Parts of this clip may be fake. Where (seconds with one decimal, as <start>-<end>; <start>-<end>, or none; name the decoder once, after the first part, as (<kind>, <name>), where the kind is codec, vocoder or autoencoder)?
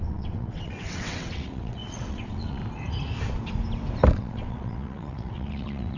0.0-2.6 (vocoder, WaveNeXt); 4.1-6.0